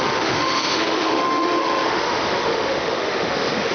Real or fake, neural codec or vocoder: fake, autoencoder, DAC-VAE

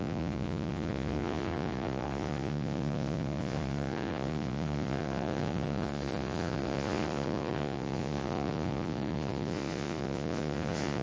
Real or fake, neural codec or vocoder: fake, vocoder, Vocos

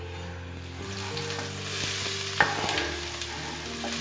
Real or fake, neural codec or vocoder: real